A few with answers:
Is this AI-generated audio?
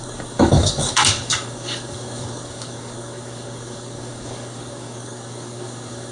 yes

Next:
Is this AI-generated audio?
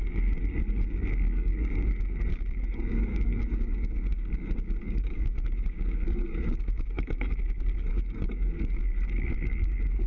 yes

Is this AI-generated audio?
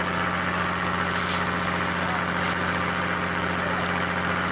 no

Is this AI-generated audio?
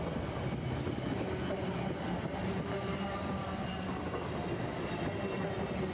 no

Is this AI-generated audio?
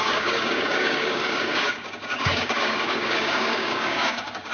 yes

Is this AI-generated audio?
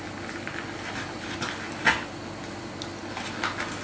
no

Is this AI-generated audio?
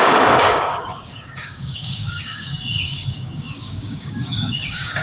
yes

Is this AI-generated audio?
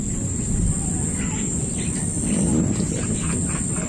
no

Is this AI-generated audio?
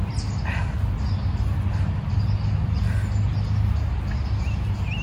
no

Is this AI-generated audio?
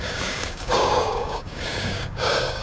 yes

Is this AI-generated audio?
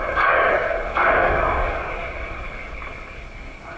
yes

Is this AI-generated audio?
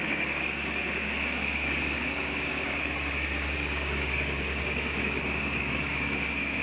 yes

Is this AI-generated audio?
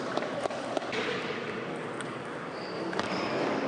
yes